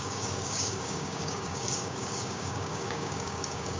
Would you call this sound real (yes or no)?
no